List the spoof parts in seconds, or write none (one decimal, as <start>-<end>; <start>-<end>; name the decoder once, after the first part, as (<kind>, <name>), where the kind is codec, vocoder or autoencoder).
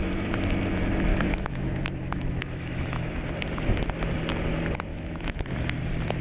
1.1-3.2 (autoencoder, DAC-VAE); 4.9-5.5